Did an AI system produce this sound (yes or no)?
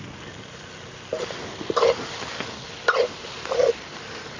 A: no